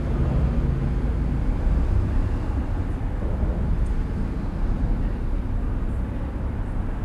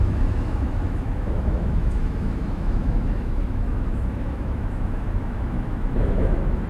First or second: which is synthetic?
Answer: second